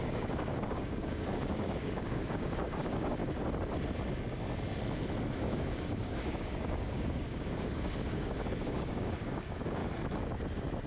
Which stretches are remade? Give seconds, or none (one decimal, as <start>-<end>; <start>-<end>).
0.0-3.2; 5.4-9.8